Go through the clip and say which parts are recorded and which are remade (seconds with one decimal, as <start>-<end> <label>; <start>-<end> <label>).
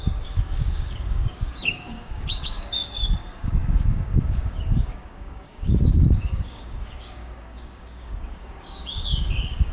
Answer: 0.0-9.7 remade